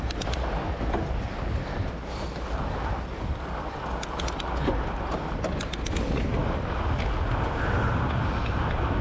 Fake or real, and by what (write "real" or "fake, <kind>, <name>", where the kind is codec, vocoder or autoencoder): real